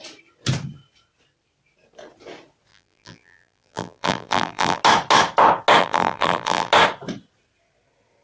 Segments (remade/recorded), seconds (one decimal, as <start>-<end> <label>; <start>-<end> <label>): 0.0-2.7 recorded; 2.7-4.8 remade; 4.8-5.8 recorded; 5.8-6.7 remade; 6.7-8.2 recorded